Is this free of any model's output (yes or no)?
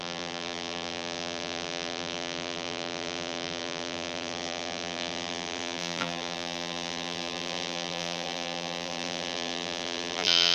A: no